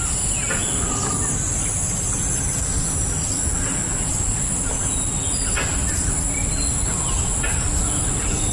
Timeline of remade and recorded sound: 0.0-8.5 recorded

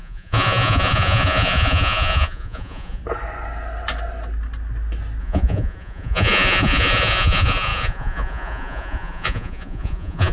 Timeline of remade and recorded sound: 0.0-3.0 remade; 3.0-5.2 recorded; 5.2-10.3 remade

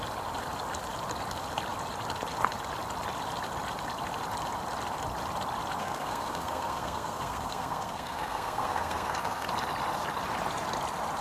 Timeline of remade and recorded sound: 0.0-5.8 recorded; 5.8-9.5 remade; 9.5-11.2 recorded

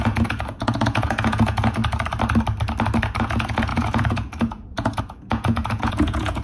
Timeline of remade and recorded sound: 0.0-1.8 remade; 1.8-3.2 recorded; 3.2-6.4 remade

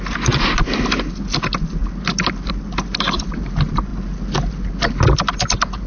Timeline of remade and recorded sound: 0.0-5.9 recorded